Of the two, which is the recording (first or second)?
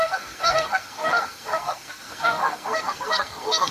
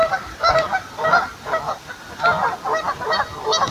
second